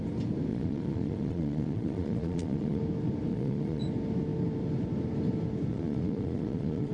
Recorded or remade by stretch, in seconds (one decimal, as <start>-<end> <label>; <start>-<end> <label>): 0.0-0.5 recorded; 0.5-2.8 remade; 2.8-3.3 recorded; 3.3-3.8 remade; 3.8-5.7 recorded; 5.7-6.9 remade